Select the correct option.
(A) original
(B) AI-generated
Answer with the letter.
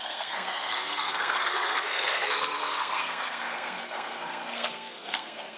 B